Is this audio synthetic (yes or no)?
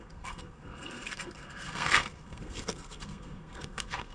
yes